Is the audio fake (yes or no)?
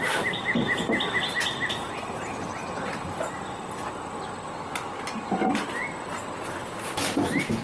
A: no